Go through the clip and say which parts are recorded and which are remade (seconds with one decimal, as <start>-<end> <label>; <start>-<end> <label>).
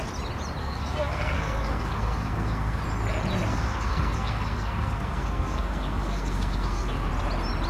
0.0-0.6 recorded; 0.6-2.8 remade; 2.8-3.5 recorded; 3.5-7.1 remade; 7.1-7.7 recorded